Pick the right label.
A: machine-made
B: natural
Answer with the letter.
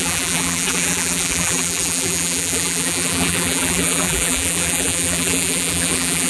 A